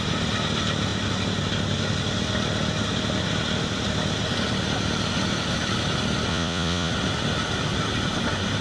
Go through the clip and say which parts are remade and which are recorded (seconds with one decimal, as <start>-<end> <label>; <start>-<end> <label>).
0.0-6.3 recorded; 6.3-6.9 remade; 6.9-8.6 recorded